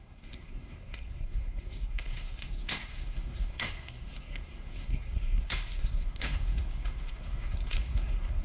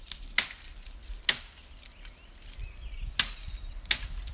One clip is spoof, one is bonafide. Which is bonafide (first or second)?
second